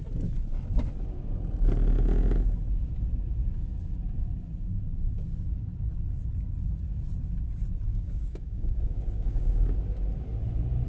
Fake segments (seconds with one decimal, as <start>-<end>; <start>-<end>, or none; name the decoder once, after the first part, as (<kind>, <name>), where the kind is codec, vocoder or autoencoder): 7.9-9.6 (codec, DAC)